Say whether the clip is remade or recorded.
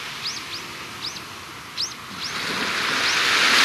recorded